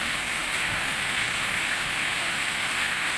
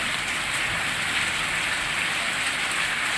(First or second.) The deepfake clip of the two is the first